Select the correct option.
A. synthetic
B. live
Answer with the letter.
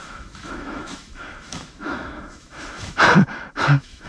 A